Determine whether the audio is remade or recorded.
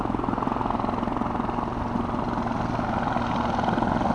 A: recorded